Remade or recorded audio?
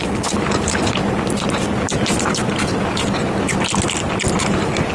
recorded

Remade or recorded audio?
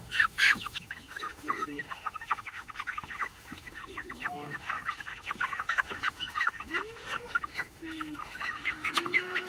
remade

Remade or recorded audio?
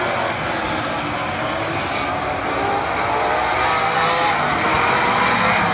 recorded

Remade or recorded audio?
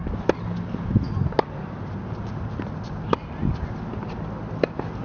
recorded